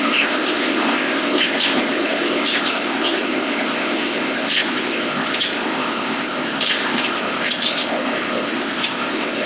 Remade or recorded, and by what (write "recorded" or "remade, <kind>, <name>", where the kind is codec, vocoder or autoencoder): remade, codec, ZipCodec